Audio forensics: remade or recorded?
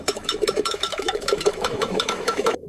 remade